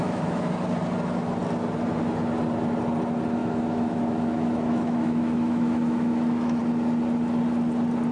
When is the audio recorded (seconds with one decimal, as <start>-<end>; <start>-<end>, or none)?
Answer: 0.5-3.4; 6.6-8.1